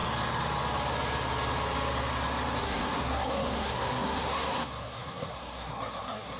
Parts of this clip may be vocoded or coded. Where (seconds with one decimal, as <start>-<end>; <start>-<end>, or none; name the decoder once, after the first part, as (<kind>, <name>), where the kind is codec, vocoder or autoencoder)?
2.6-6.4 (codec, SNAC)